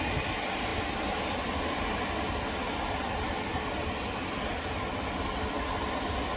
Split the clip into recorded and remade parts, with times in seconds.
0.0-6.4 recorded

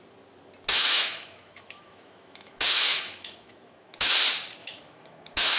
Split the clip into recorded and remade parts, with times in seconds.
0.0-0.7 recorded; 0.7-4.1 remade; 4.1-4.6 recorded; 4.6-5.6 remade

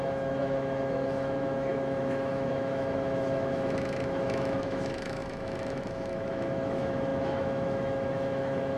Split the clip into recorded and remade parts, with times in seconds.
0.0-8.8 remade

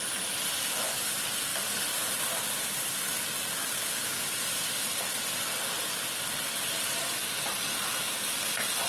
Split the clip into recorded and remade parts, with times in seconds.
0.0-8.9 recorded

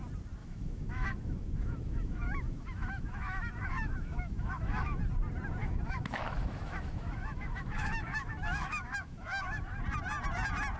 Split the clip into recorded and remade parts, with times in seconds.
0.0-0.4 recorded; 0.4-5.0 remade; 5.0-5.6 recorded; 5.6-9.8 remade; 9.8-10.8 recorded

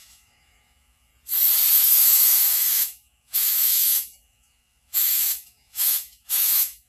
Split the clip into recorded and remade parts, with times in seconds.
0.0-1.1 remade; 1.1-1.7 recorded; 1.7-6.9 remade

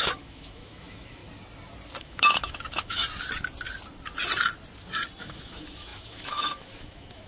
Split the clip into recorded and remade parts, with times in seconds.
0.0-1.2 remade; 1.2-2.0 recorded; 2.0-3.0 remade; 3.0-5.2 recorded; 5.2-7.3 remade